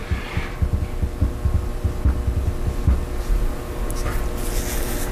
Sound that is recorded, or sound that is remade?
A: recorded